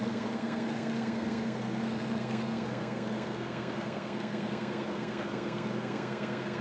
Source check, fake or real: fake